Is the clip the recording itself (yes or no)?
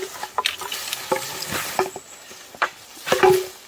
yes